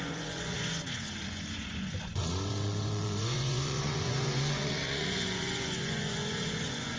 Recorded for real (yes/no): no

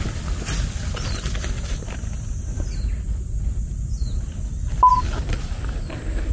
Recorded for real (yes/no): yes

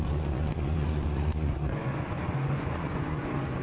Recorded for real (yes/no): no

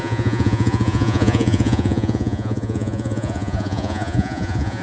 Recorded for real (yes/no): no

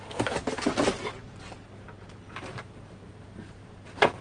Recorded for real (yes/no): yes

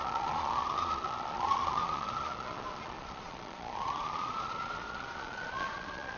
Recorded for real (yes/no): no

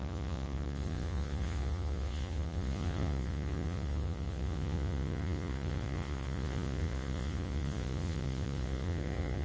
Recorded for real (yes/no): no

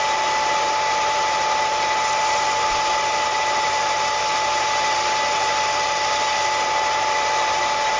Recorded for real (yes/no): yes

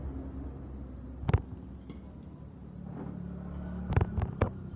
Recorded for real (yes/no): yes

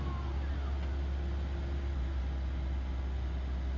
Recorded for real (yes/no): yes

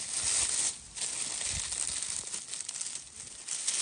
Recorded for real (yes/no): yes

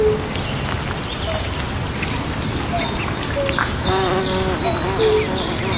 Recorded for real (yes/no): yes